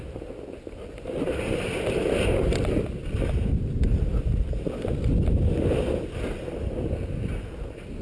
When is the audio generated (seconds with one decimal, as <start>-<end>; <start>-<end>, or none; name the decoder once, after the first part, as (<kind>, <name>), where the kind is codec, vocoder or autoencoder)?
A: none